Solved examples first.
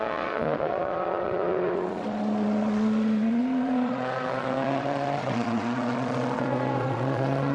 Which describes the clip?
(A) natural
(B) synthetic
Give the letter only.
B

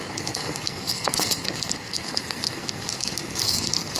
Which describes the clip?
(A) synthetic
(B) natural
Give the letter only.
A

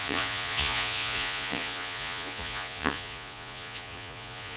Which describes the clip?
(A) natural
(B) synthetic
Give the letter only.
B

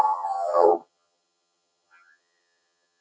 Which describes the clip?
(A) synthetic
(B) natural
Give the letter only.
A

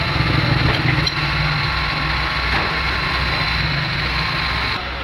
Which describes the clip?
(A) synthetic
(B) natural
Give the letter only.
B